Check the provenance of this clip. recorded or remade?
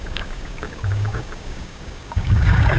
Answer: remade